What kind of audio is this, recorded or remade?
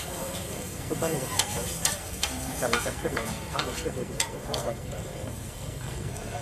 remade